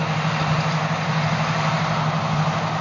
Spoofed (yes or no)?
no